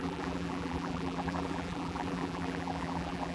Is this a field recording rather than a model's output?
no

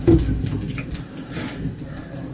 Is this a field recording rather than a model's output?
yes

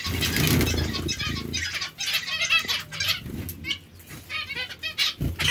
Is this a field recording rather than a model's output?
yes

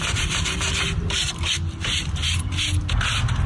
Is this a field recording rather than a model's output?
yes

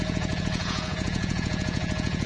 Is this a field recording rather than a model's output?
no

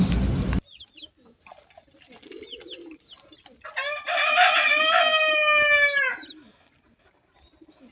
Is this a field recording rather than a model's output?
yes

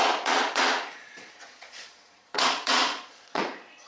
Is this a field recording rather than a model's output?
no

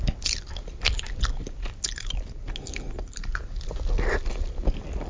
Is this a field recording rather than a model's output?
yes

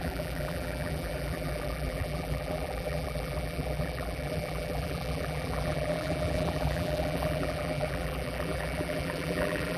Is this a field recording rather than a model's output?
no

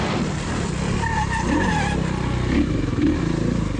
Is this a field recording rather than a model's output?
yes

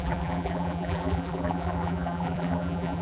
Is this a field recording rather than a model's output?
no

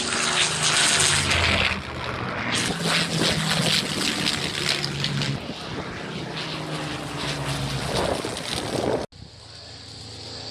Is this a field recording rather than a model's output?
yes